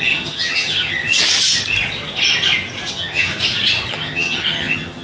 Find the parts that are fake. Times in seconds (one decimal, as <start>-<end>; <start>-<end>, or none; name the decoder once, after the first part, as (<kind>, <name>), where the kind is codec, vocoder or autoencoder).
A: 0.0-1.0 (vocoder, HiFi-GAN); 2.9-3.3; 3.9-5.0